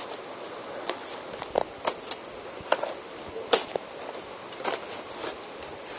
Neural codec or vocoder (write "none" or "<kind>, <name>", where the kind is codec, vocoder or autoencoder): none